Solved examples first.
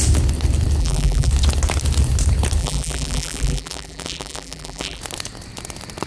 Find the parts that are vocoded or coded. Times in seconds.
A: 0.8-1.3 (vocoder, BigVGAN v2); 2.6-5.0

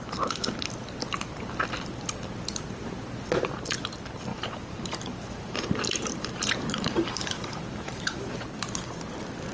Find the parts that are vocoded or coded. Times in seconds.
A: 4.3-8.2 (vocoder, BigVGAN v2)

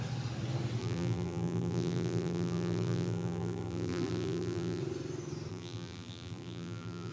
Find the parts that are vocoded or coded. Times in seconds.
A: 0.8-4.8 (vocoder, BigVGAN v2); 5.5-7.1